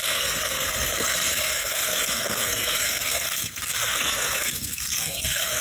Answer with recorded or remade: remade